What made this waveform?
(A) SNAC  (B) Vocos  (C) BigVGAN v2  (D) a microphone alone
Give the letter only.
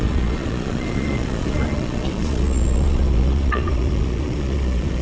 B